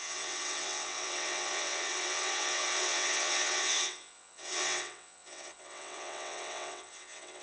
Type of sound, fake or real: fake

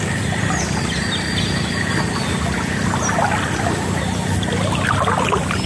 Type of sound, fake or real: real